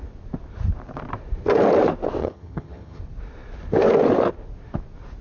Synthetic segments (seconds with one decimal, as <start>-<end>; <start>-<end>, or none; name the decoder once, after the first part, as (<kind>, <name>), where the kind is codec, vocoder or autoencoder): 2.2-3.0 (vocoder, HiFi-GAN)